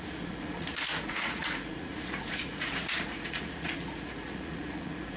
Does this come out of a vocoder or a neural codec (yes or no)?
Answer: yes